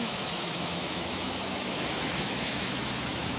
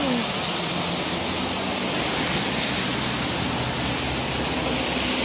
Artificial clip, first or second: first